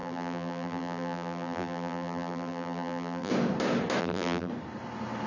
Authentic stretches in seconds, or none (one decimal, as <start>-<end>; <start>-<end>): 3.3-4.0; 4.5-5.3